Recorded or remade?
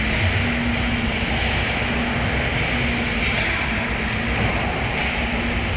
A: recorded